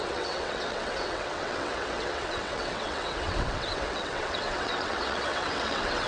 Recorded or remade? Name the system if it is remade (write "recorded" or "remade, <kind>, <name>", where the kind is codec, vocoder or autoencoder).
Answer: remade, vocoder, WaveNeXt